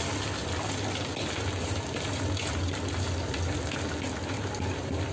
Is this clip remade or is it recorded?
recorded